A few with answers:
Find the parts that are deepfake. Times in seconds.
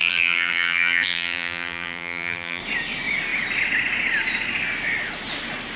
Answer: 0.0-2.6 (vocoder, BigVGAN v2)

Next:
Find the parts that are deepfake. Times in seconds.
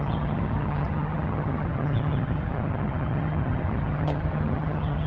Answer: 0.0-5.1 (vocoder, HiFi-GAN)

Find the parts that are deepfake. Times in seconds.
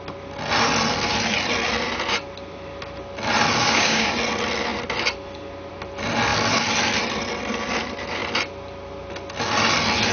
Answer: 3.6-4.1 (codec, DAC)